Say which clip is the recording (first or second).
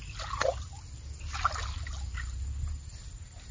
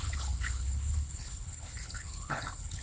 first